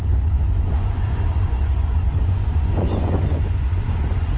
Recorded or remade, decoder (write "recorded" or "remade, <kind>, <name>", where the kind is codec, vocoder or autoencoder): remade, vocoder, Vocos